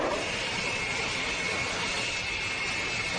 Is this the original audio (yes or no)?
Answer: yes